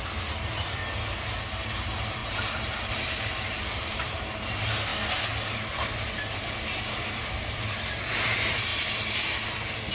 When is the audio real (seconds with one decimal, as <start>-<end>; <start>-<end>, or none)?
0.8-1.4; 4.9-7.0